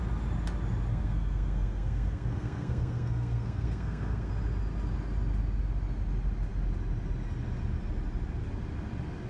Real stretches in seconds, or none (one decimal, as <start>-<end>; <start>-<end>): 0.0-0.9; 4.3-9.3